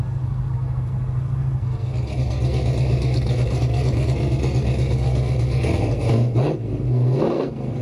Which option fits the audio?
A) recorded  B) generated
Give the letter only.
B